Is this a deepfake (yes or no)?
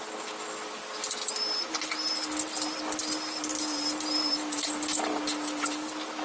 no